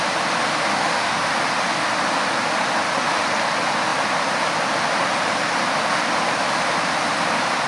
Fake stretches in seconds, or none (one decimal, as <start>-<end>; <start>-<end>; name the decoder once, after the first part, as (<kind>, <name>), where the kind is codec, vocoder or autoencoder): 0.7-1.3 (autoencoder, DAC-VAE)

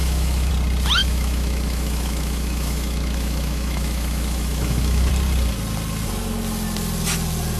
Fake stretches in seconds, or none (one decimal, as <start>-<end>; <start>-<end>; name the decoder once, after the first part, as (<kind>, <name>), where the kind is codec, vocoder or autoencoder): 0.0-0.5 (autoencoder, DAC-VAE); 1.0-5.1